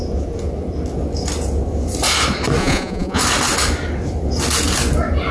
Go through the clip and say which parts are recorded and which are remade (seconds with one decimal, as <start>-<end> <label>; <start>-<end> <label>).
0.0-2.6 recorded; 2.6-3.2 remade; 3.2-5.3 recorded